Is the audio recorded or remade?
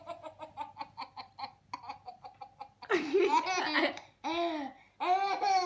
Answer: recorded